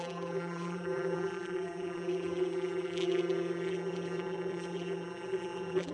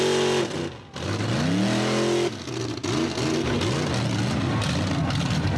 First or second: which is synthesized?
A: first